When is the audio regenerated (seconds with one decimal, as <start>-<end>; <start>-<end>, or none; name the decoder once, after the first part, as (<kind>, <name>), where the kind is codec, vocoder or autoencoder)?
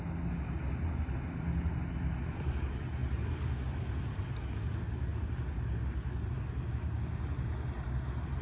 none